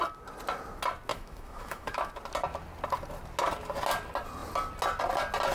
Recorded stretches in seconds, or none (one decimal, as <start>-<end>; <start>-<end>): 0.0-1.1; 2.1-5.5